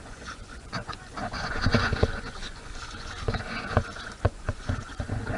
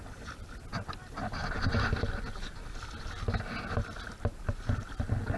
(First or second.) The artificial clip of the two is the first